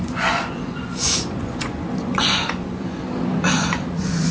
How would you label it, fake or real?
fake